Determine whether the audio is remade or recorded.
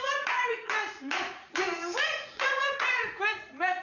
remade